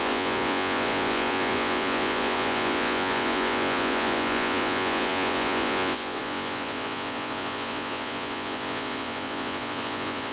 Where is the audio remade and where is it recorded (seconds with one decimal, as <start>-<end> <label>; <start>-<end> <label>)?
0.0-10.3 remade